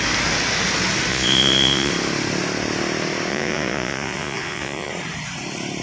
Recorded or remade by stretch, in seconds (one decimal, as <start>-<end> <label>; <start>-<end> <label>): 0.0-1.1 recorded; 1.1-1.9 remade; 1.9-3.3 recorded; 3.3-4.9 remade; 4.9-5.8 recorded

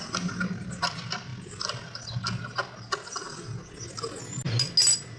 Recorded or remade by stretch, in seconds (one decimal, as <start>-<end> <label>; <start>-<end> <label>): 0.0-5.2 recorded

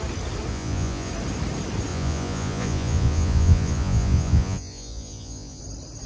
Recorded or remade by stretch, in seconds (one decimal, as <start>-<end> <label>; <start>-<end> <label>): 0.0-0.5 recorded; 0.5-1.1 remade; 1.1-1.9 recorded; 1.9-5.6 remade; 5.6-6.1 recorded

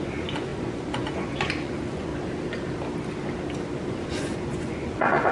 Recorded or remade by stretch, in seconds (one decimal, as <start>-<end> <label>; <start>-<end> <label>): 0.0-2.1 remade; 2.1-3.9 recorded; 3.9-5.3 remade

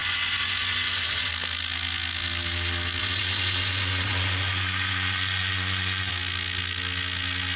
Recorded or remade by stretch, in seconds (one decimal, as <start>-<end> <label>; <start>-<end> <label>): 0.0-1.3 remade; 1.3-3.0 recorded; 3.0-6.1 remade; 6.1-7.6 recorded

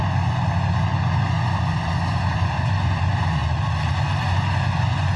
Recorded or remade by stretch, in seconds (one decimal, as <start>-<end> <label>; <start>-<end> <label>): 0.0-3.4 remade; 3.4-4.2 recorded; 4.2-5.2 remade